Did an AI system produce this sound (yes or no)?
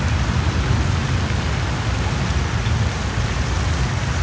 no